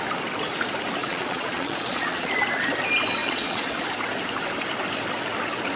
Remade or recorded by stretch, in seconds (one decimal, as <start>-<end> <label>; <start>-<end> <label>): 0.0-1.0 recorded; 1.0-2.3 remade; 2.3-3.2 recorded; 3.2-3.8 remade; 3.8-5.8 recorded